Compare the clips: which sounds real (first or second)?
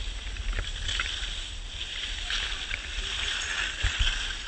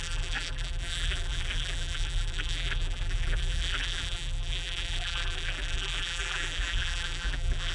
first